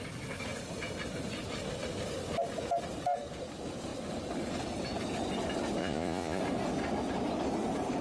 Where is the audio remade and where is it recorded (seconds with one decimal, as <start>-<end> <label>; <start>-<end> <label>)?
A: 0.0-5.8 recorded; 5.8-6.4 remade; 6.4-8.0 recorded